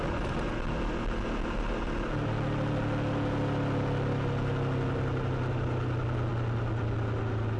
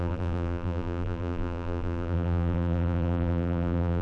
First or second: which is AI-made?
second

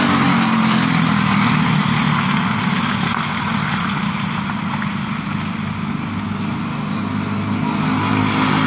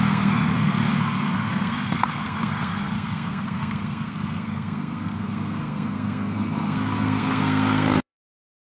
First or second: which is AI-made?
second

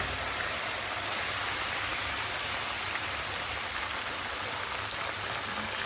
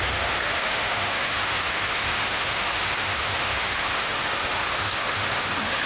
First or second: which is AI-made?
second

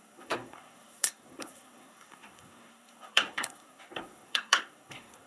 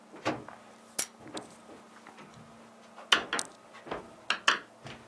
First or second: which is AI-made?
first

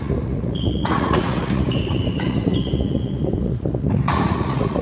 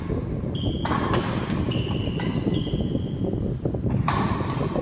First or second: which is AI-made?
first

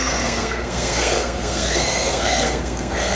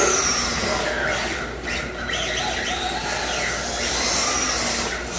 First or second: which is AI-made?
first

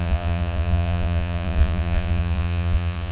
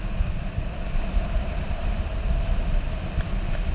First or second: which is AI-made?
first